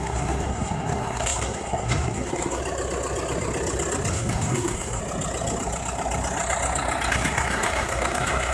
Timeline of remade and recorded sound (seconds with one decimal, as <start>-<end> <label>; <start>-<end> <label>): 0.0-2.6 remade; 2.6-4.1 recorded; 4.1-5.0 remade; 5.0-7.1 recorded; 7.1-8.5 remade